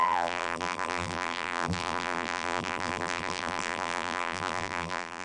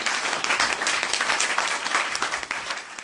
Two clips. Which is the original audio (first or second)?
second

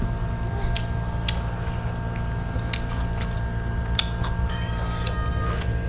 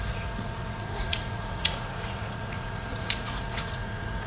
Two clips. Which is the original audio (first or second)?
first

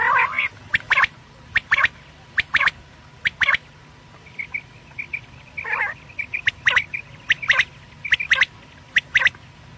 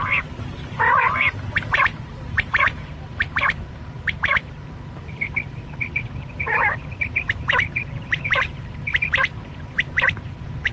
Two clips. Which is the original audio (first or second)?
first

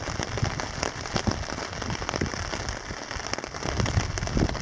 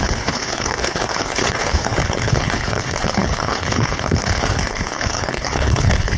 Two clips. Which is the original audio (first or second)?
first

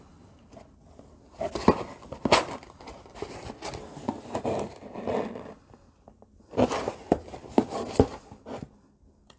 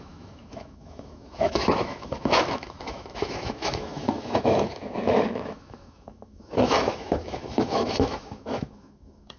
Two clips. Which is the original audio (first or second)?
first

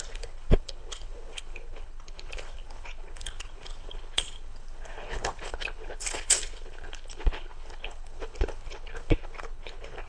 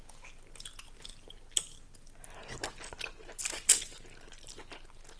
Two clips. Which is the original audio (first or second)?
second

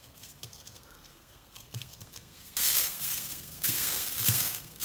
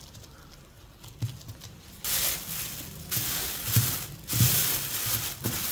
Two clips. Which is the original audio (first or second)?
second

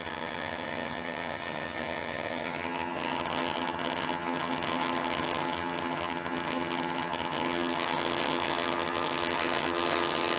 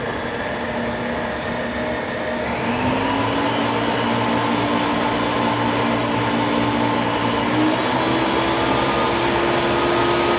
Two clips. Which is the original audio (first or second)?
second